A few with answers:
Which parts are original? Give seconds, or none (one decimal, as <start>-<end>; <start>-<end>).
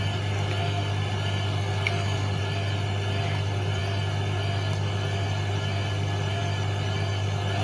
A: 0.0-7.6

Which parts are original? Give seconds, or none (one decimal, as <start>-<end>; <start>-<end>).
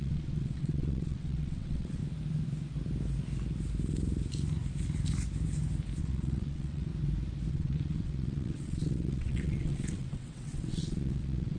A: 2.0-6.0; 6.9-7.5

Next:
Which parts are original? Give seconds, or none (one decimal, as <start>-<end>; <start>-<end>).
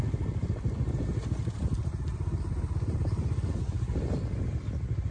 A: 0.0-5.1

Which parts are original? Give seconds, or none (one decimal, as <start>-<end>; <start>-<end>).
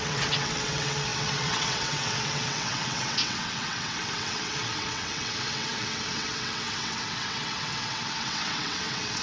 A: none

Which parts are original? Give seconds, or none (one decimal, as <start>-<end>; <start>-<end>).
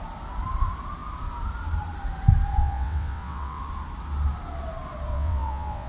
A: 0.0-2.6; 3.6-5.1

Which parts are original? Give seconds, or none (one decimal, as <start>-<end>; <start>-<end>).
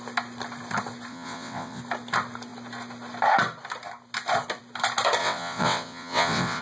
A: 0.0-1.1; 1.8-5.2